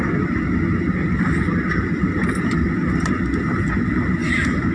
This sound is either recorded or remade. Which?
recorded